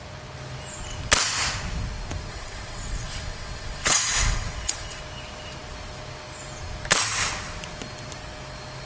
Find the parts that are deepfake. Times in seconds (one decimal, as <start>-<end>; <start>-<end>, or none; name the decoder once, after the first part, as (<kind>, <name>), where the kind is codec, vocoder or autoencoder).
2.3-5.0 (vocoder, WaveNeXt)